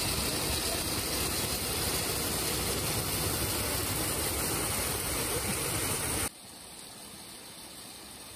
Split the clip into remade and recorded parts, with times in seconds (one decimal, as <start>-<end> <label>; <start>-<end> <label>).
0.0-4.8 recorded; 4.8-5.8 remade; 5.8-8.4 recorded

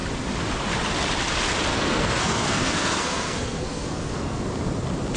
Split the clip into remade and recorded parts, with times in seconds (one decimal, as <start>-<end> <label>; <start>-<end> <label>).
0.0-1.7 recorded; 1.7-4.4 remade; 4.4-5.2 recorded

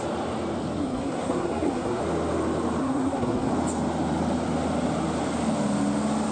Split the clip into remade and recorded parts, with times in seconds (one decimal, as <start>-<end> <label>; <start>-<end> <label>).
0.0-0.8 recorded; 0.8-2.0 remade; 2.0-2.8 recorded; 2.8-3.5 remade; 3.5-6.3 recorded